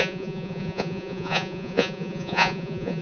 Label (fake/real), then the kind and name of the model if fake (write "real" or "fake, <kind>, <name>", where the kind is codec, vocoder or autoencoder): fake, vocoder, Vocos